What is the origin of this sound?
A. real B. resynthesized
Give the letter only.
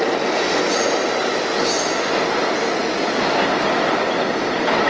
A